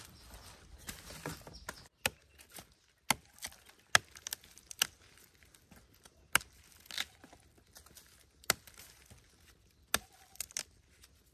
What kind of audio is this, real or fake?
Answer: real